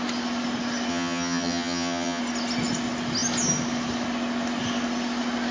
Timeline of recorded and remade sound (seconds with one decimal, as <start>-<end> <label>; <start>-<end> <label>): 0.0-0.9 recorded; 0.9-2.2 remade; 2.2-5.5 recorded